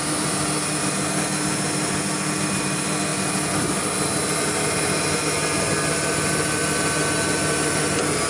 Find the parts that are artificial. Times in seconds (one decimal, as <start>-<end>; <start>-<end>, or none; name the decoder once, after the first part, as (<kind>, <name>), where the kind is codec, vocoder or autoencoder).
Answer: none